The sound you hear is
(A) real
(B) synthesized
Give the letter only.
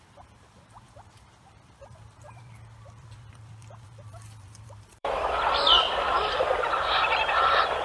B